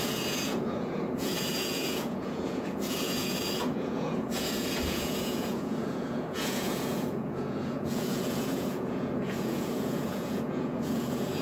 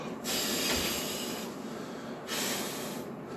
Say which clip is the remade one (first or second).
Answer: first